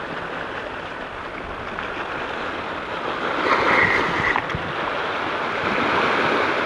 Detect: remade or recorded recorded